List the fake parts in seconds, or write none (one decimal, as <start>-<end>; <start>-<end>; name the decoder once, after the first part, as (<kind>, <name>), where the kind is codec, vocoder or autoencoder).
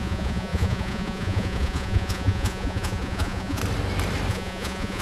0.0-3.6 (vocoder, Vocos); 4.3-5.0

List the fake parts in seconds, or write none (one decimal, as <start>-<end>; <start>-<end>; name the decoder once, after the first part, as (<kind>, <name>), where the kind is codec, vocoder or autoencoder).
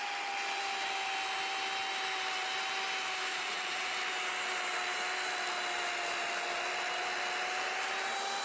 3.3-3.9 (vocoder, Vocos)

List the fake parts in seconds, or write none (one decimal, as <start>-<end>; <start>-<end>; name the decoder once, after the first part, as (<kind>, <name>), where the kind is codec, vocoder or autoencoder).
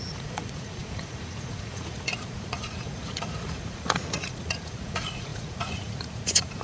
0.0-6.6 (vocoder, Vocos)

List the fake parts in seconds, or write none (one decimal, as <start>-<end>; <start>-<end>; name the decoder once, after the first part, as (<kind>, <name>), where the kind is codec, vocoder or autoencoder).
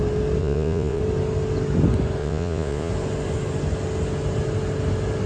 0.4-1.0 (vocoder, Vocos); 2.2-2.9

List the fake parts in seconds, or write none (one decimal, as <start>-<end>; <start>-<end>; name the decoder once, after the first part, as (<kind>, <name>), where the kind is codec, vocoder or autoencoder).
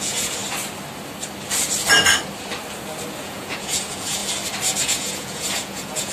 0.0-0.4 (vocoder, Vocos); 3.2-4.2; 4.8-6.1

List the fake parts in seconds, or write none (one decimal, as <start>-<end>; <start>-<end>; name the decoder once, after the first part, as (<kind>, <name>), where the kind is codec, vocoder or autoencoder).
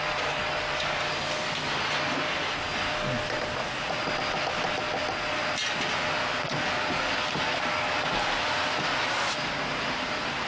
3.6-4.1 (vocoder, Vocos)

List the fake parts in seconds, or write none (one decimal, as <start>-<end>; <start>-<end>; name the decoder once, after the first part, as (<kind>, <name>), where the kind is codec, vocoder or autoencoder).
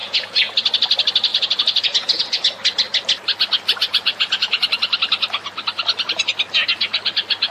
0.0-0.5 (vocoder, Vocos); 1.3-2.4; 3.8-4.6